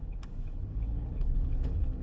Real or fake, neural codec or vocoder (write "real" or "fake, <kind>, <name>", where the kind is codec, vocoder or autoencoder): fake, codec, HILCodec